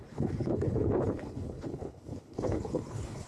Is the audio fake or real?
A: fake